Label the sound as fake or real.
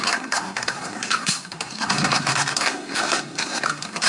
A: fake